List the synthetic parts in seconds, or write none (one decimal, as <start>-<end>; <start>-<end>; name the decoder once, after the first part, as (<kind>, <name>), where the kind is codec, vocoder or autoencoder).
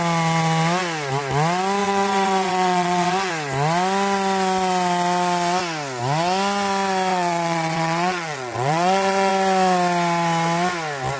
1.8-3.3 (vocoder, WaveNeXt); 7.1-9.3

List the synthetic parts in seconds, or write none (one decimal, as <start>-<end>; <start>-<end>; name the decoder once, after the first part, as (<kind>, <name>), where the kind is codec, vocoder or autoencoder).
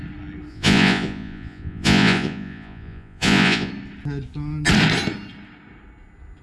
0.5-3.7 (vocoder, Vocos)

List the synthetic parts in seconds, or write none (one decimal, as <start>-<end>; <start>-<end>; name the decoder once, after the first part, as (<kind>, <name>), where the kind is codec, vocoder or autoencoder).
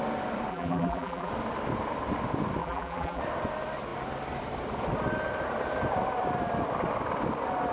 0.5-1.3 (vocoder, BigVGAN v2); 2.6-3.2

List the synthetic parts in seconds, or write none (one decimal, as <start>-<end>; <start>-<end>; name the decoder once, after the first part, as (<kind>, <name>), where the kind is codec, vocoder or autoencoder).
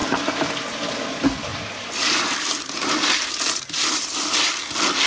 0.0-0.8 (vocoder, BigVGAN v2); 1.5-4.6